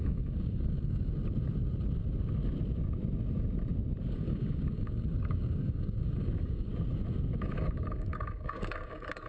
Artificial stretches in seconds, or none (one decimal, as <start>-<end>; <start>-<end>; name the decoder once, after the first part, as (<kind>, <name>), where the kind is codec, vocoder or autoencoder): 0.0-1.2 (codec, DAC); 4.1-6.7; 7.4-9.3